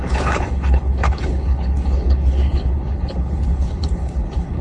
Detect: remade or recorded remade